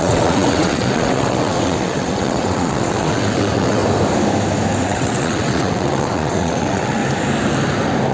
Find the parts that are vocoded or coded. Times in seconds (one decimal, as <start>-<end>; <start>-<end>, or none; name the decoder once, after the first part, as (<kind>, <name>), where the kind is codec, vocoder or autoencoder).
0.0-3.8 (vocoder, WaveNeXt); 4.8-7.0